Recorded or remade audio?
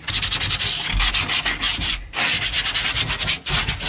recorded